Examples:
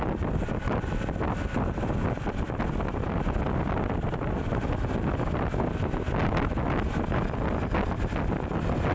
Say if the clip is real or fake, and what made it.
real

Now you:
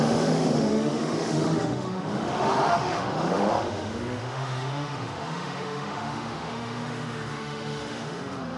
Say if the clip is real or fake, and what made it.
fake, autoencoder, DAC-VAE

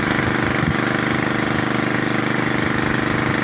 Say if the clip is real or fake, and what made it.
real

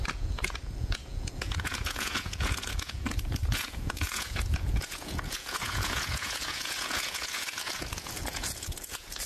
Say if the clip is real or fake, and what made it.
fake, vocoder, Vocos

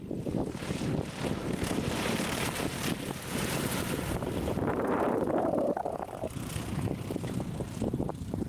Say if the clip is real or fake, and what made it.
fake, vocoder, BigVGAN v2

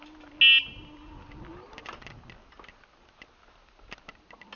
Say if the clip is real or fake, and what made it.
real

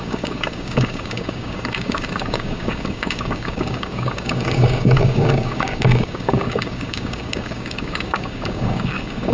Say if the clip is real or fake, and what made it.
fake, codec, DAC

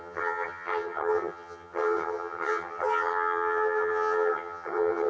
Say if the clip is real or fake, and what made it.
fake, vocoder, HiFi-GAN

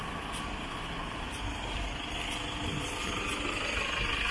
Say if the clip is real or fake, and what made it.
real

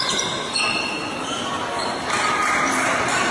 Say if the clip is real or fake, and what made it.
fake, vocoder, BigVGAN v2